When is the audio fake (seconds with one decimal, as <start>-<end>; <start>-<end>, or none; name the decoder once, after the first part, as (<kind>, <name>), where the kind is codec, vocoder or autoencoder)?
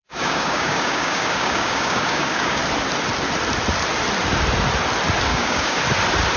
0.0-2.6 (codec, DAC); 5.3-5.8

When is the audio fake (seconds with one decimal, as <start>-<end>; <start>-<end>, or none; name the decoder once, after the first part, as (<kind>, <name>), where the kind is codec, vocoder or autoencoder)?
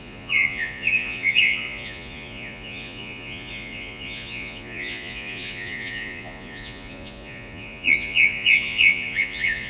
0.0-9.7 (vocoder, Vocos)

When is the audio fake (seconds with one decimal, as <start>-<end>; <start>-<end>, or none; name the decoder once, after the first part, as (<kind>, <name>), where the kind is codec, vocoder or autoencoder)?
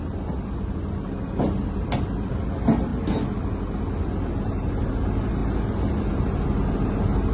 0.0-2.3 (vocoder, BigVGAN v2); 5.4-6.0